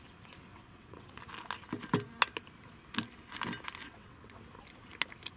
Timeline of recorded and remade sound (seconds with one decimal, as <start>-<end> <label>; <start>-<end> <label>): 0.0-0.5 recorded; 0.5-1.2 remade; 1.2-3.8 recorded; 3.8-4.4 remade; 4.4-5.4 recorded